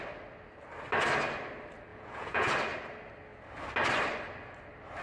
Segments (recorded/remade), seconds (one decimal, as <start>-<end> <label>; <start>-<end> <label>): 0.0-1.9 recorded; 1.9-2.5 remade; 2.5-5.0 recorded